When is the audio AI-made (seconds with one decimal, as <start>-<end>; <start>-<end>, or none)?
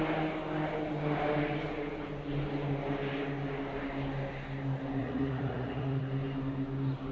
5.0-6.0